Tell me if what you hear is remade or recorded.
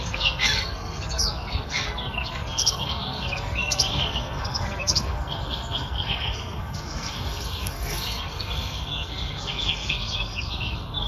remade